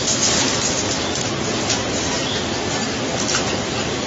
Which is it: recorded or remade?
recorded